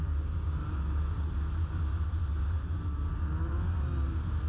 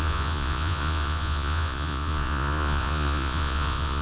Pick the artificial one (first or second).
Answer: second